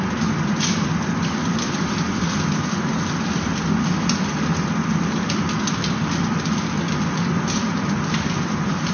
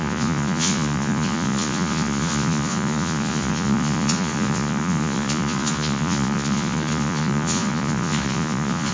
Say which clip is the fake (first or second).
second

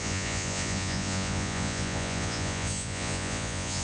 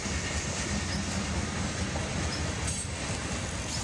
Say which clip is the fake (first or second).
first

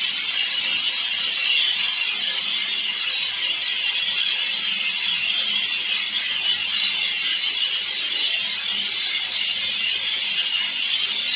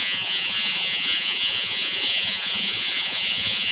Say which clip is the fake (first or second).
second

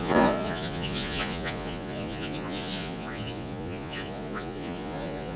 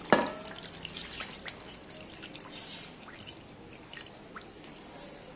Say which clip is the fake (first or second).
first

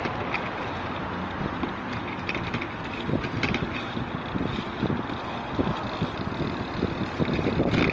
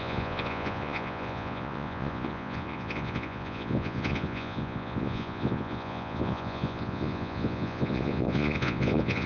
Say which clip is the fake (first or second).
second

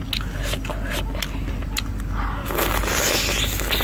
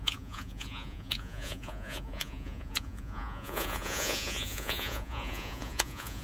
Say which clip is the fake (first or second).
second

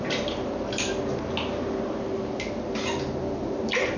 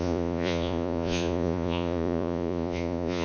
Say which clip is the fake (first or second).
second